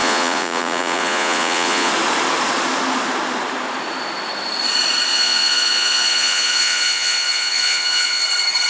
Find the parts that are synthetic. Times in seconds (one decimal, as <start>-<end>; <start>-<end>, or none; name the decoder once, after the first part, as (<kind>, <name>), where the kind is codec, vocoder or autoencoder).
0.0-1.9 (vocoder, Vocos); 5.1-8.2